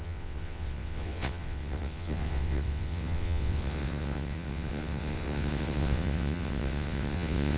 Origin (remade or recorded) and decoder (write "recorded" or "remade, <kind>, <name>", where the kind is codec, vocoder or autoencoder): remade, vocoder, WaveNeXt